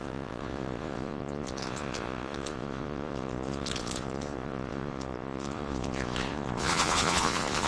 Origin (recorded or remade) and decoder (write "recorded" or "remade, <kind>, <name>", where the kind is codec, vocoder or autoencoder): remade, vocoder, Vocos